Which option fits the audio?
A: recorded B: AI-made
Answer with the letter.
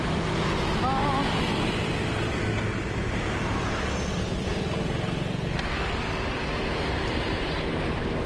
A